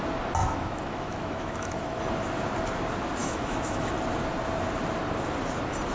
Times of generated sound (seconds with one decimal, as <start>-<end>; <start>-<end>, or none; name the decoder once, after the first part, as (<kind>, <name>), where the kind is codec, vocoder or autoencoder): 0.4-2.0 (autoencoder, DAC-VAE); 3.2-3.9